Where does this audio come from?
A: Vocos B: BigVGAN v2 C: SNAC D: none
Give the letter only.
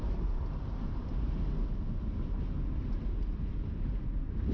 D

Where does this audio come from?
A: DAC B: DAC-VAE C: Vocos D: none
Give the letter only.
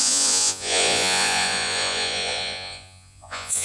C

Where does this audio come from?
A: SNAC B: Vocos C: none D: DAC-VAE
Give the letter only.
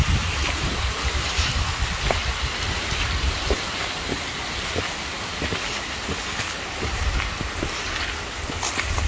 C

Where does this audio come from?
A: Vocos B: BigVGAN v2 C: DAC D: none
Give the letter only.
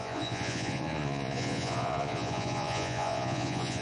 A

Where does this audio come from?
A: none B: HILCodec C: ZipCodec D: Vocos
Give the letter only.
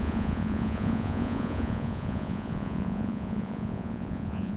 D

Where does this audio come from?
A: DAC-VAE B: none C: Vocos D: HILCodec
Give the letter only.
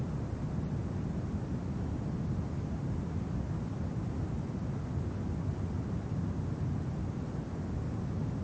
B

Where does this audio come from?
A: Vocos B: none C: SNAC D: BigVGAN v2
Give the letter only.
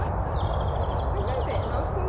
B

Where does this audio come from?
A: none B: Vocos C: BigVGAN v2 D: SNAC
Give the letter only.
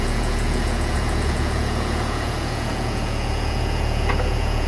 B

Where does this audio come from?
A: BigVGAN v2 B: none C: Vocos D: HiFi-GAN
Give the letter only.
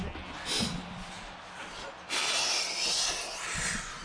B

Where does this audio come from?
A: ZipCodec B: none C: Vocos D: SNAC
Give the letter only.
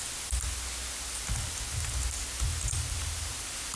B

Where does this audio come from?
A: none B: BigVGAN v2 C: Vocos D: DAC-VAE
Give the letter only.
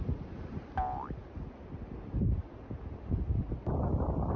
A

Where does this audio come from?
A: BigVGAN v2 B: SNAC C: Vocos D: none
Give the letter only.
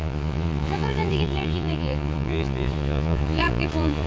C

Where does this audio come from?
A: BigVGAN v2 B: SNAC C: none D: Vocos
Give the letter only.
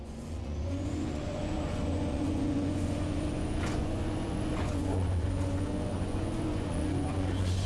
D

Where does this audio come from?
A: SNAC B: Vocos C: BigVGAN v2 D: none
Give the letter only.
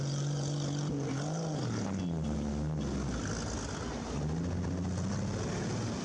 D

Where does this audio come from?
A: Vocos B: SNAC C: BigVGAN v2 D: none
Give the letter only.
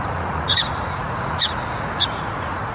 A